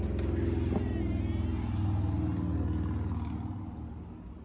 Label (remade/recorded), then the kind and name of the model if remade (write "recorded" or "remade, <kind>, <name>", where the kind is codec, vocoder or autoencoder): recorded